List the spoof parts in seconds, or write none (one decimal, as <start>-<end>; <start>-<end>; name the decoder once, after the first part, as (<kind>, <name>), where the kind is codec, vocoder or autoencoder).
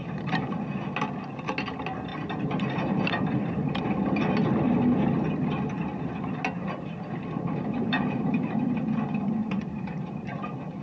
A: 2.1-3.8 (vocoder, BigVGAN v2); 6.6-8.8; 9.4-10.3